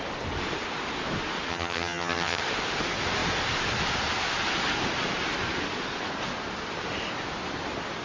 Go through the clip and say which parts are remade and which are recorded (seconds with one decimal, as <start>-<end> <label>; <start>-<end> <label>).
0.0-1.5 recorded; 1.5-2.4 remade; 2.4-8.0 recorded